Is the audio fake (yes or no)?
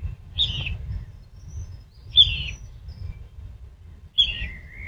no